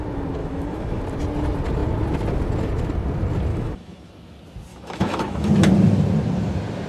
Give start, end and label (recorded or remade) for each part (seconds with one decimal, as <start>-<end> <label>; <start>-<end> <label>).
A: 0.0-0.4 recorded; 0.4-1.0 remade; 1.0-3.5 recorded; 3.5-4.1 remade; 4.1-4.7 recorded; 4.7-5.5 remade; 5.5-6.9 recorded